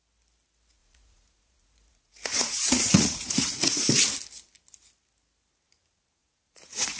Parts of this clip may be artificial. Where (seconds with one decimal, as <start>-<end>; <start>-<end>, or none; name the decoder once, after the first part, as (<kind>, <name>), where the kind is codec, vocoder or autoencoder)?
0.8-3.9 (vocoder, Vocos); 6.2-7.0